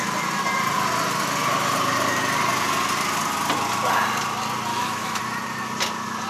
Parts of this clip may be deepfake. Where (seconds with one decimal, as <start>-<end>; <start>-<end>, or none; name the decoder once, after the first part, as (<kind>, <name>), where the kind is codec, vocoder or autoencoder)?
4.7-5.2 (autoencoder, DAC-VAE)